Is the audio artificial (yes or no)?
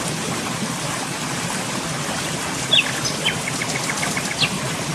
no